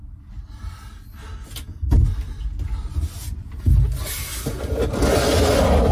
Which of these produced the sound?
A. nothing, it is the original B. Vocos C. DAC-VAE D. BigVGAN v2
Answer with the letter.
A